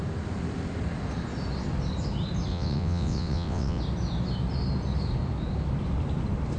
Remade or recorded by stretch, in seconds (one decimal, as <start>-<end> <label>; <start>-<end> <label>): 0.0-2.5 recorded; 2.5-3.8 remade; 3.8-6.6 recorded